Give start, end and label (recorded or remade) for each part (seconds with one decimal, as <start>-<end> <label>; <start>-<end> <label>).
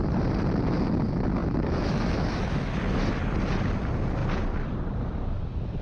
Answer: 0.0-1.4 recorded; 1.4-3.1 remade; 3.1-5.8 recorded